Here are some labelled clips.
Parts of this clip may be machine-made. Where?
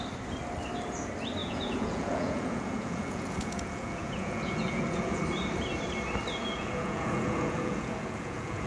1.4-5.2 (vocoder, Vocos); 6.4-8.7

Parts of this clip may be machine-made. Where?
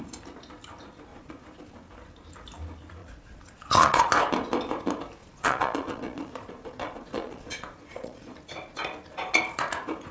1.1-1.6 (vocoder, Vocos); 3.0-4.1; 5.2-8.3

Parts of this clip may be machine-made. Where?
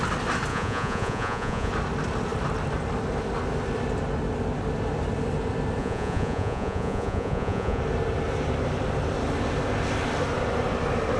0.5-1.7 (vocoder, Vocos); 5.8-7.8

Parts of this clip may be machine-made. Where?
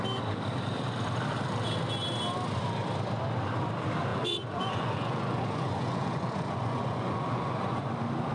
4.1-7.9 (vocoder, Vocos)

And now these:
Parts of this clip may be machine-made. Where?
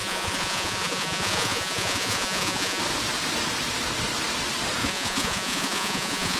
0.0-2.8 (vocoder, Vocos); 4.8-6.4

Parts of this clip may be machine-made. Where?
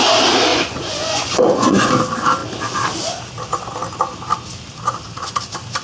0.5-1.9 (vocoder, Vocos)